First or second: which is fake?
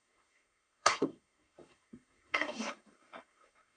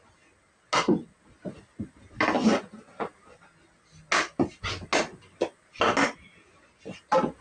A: first